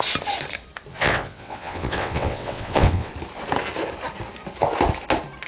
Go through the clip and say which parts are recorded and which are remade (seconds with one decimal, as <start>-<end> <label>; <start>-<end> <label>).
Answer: 0.0-0.9 recorded; 0.9-3.1 remade; 3.1-5.5 recorded

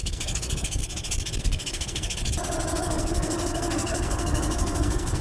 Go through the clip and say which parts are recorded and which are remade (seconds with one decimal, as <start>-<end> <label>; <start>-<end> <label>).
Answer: 0.0-0.8 remade; 0.8-1.4 recorded; 1.4-2.2 remade; 2.2-2.8 recorded; 2.8-5.2 remade

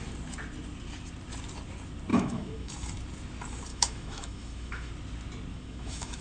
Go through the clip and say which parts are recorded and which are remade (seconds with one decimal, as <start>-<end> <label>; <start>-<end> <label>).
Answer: 0.0-2.1 recorded; 2.1-2.7 remade; 2.7-3.7 recorded; 3.7-4.9 remade; 4.9-5.5 recorded; 5.5-6.2 remade

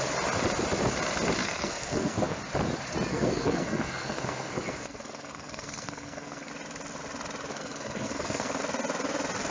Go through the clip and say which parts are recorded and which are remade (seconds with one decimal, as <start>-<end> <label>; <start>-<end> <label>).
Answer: 0.0-1.4 recorded; 1.4-2.4 remade; 2.4-3.1 recorded; 3.1-6.5 remade; 6.5-7.5 recorded; 7.5-8.6 remade; 8.6-9.5 recorded

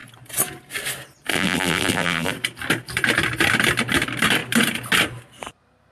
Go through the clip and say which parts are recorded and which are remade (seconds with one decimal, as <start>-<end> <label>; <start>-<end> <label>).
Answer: 0.0-1.3 recorded; 1.3-2.3 remade; 2.3-5.9 recorded

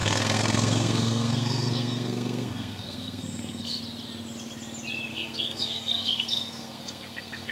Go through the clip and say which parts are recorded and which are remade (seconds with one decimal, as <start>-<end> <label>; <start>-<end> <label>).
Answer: 0.0-3.8 remade; 3.8-5.1 recorded; 5.1-7.5 remade

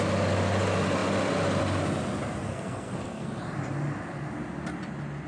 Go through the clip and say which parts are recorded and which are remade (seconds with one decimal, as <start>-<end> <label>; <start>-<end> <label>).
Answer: 0.0-2.5 recorded; 2.5-3.4 remade; 3.4-5.3 recorded